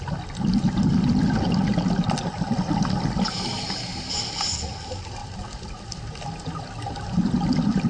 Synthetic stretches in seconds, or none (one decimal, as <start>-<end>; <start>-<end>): none